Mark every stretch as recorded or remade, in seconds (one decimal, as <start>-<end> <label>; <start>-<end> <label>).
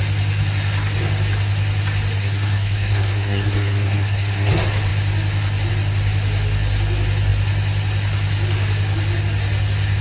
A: 0.0-2.2 recorded; 2.2-4.5 remade; 4.5-10.0 recorded